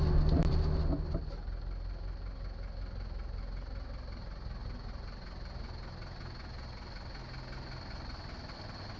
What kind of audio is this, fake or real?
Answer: real